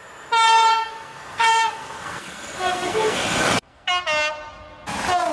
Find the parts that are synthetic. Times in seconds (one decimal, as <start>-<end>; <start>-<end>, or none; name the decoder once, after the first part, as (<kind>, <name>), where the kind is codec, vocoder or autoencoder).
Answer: 0.7-3.9 (codec, SNAC)